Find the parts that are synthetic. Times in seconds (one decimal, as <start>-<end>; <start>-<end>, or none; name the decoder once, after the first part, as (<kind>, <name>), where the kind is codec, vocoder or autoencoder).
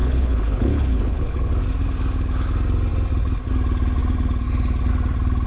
0.0-1.5 (codec, HILCodec)